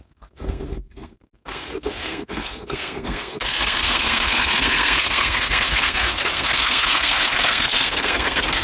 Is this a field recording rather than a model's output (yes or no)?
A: no